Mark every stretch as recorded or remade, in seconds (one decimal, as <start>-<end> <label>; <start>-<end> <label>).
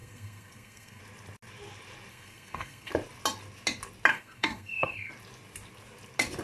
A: 0.0-1.0 remade; 1.0-2.1 recorded; 2.1-2.9 remade; 2.9-4.1 recorded; 4.1-5.1 remade; 5.1-6.4 recorded